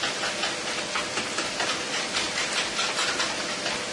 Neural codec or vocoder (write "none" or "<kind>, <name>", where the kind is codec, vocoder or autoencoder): none